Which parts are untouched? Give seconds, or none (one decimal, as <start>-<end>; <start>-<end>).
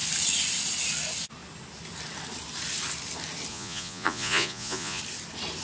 0.0-3.5; 5.0-5.6